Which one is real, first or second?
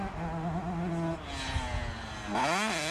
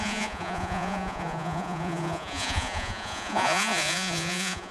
first